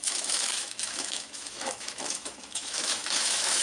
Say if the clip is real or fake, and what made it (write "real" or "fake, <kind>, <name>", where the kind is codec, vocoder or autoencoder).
fake, autoencoder, DAC-VAE